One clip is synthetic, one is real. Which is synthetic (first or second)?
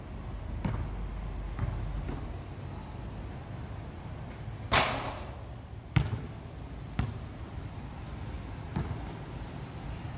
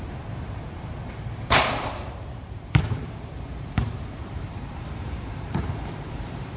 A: second